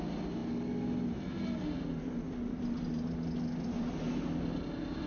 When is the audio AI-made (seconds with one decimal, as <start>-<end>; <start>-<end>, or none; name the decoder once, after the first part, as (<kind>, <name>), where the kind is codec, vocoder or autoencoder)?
none